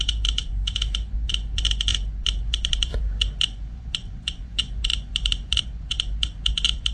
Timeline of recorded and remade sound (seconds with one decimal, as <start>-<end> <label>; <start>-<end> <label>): 0.0-6.9 remade